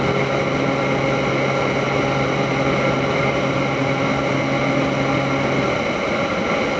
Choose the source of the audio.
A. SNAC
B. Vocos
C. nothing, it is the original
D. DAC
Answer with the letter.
C